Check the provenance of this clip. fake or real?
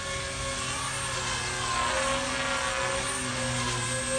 real